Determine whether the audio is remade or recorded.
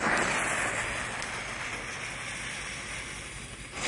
recorded